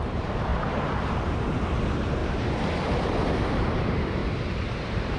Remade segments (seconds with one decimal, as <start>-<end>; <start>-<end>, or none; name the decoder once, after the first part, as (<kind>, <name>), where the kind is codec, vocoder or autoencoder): 0.0-0.5 (vocoder, BigVGAN v2); 1.3-2.2; 3.4-4.2; 4.7-5.2